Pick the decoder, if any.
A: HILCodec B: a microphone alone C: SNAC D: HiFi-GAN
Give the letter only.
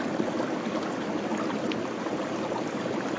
B